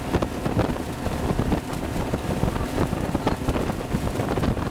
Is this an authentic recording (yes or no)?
yes